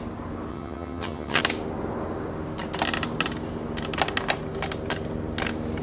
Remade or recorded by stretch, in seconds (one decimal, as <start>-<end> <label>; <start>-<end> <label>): 0.0-0.5 recorded; 0.5-1.4 remade; 1.4-5.8 recorded